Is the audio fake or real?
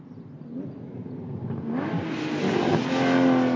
real